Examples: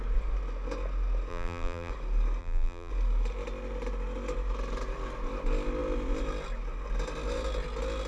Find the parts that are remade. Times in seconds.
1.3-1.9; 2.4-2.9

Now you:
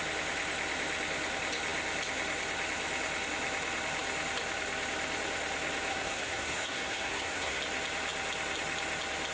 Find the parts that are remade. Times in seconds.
5.9-7.6

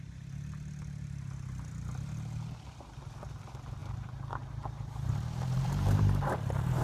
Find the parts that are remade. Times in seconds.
3.8-6.8